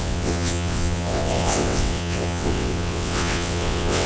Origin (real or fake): fake